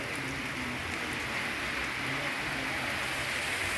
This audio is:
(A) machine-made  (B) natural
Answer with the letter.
B